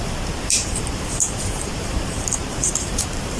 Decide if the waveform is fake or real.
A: fake